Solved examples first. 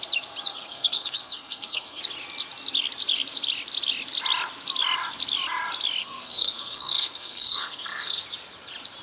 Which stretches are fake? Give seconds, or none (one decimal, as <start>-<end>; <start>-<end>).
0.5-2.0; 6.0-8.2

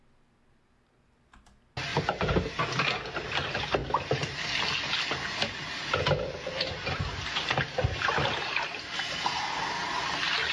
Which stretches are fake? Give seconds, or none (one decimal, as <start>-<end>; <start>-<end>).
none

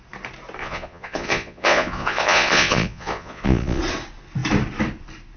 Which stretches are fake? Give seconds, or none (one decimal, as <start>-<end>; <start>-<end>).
0.6-3.8